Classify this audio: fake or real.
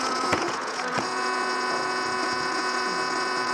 fake